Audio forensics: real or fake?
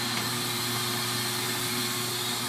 real